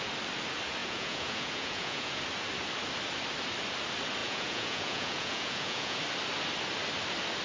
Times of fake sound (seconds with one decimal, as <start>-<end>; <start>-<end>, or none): 0.8-2.2; 4.2-6.0